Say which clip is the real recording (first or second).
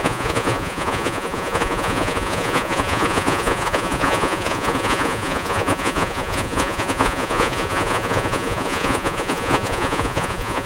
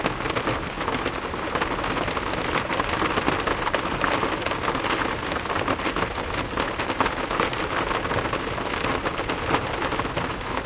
second